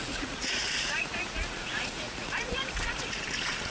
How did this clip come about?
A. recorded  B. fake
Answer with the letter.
B